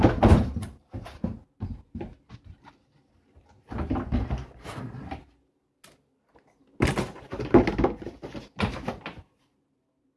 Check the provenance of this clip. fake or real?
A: real